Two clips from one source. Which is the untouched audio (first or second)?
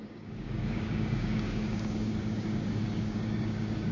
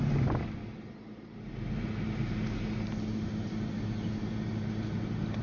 second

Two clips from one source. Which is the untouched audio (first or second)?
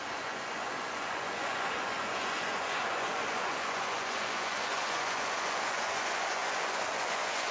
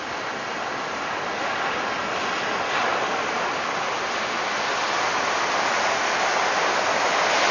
second